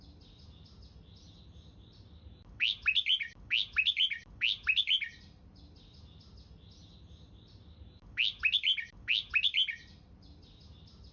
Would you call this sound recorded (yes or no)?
yes